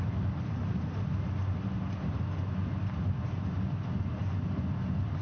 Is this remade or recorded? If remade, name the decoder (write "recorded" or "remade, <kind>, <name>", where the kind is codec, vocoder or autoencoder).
recorded